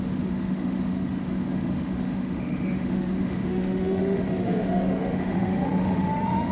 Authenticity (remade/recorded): remade